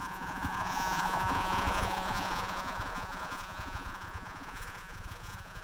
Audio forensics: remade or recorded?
remade